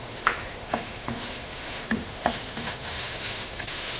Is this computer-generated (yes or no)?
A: yes